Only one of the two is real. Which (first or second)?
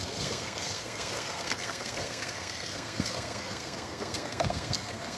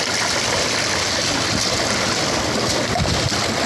second